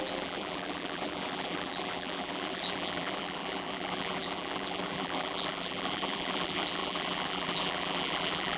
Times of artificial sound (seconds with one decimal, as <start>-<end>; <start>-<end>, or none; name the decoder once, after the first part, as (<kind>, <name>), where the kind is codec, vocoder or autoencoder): 0.0-8.6 (vocoder, BigVGAN v2)